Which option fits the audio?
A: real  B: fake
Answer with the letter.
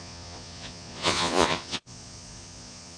B